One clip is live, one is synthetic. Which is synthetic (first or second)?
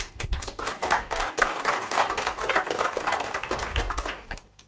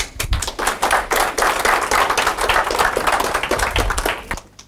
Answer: first